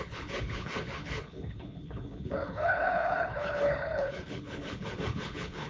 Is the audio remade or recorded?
remade